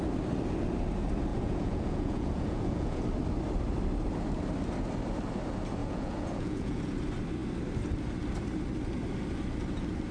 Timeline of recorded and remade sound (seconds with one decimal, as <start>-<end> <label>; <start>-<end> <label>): 0.0-1.3 recorded; 1.3-3.0 remade; 3.0-5.8 recorded; 5.8-6.8 remade; 6.8-10.1 recorded